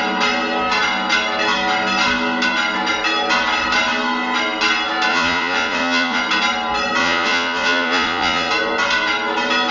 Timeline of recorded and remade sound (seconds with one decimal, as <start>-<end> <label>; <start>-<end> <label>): 0.0-5.1 recorded; 5.1-6.2 remade; 6.2-7.0 recorded; 7.0-8.5 remade; 8.5-9.7 recorded